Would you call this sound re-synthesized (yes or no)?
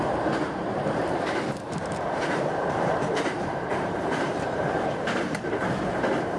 yes